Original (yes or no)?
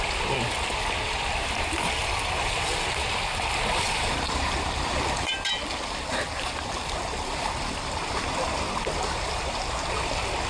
no